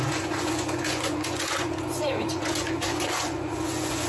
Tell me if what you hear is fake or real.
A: fake